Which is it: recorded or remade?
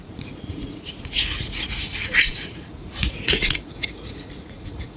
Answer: remade